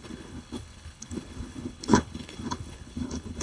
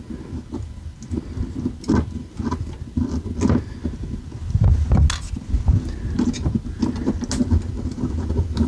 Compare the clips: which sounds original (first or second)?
second